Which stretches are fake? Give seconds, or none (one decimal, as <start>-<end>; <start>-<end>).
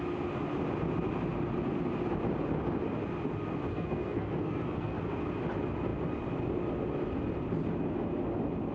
3.7-5.0